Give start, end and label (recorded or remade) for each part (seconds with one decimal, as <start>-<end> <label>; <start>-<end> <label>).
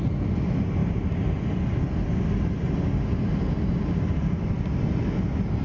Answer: 0.0-5.6 recorded